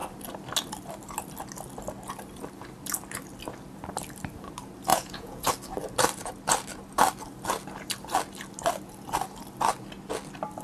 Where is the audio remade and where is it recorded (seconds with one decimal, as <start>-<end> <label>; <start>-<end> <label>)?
0.0-4.9 recorded; 4.9-5.5 remade; 5.5-10.6 recorded